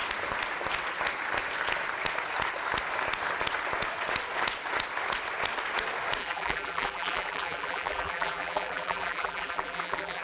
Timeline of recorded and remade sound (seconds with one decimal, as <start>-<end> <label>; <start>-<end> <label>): 0.0-6.2 recorded; 6.2-10.2 remade